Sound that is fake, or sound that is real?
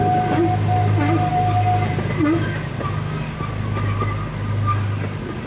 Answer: real